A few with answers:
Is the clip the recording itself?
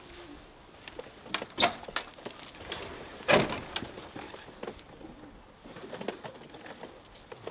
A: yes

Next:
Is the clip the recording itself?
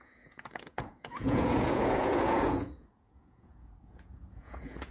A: no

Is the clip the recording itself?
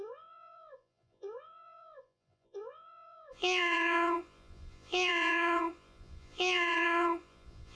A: no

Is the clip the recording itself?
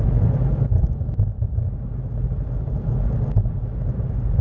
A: yes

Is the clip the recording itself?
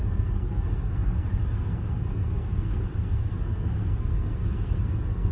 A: no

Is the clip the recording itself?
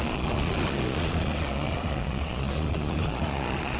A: no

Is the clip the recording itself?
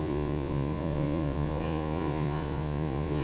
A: no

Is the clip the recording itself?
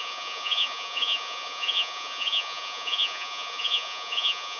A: no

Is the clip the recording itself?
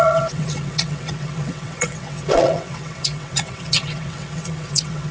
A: no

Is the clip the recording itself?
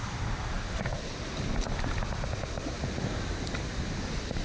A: yes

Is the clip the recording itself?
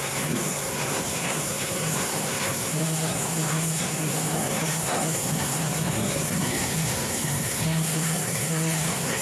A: no